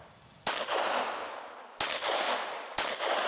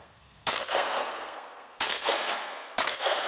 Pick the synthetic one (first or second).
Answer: second